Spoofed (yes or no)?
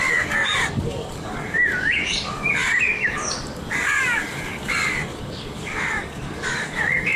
yes